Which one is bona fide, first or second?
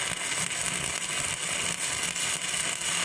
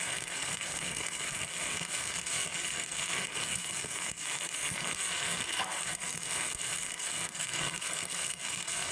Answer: first